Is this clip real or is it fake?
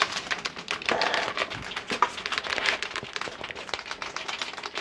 real